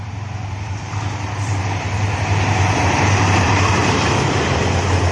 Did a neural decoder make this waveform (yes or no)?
yes